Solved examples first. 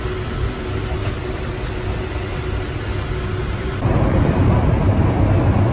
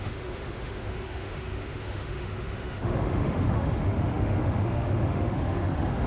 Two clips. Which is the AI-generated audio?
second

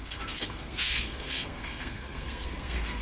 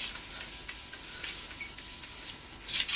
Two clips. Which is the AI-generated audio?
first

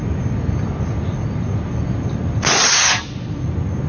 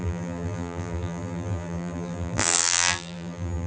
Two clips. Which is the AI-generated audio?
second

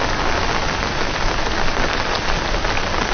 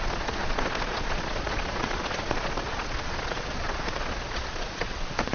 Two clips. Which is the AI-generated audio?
second